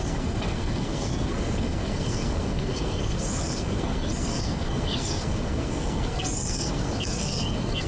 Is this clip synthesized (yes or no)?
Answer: yes